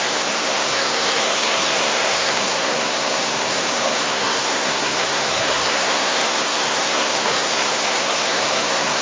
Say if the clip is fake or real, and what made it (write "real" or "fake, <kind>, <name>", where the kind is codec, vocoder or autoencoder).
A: fake, codec, SNAC